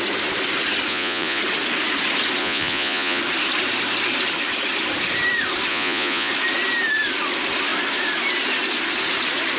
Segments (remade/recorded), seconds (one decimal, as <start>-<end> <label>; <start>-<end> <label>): 0.0-0.9 recorded; 0.9-1.4 remade; 1.4-2.4 recorded; 2.4-3.2 remade; 3.2-5.7 recorded; 5.7-6.3 remade; 6.3-9.6 recorded